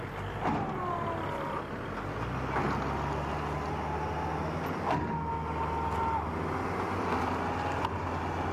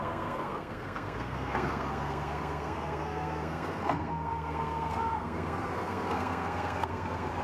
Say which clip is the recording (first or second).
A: first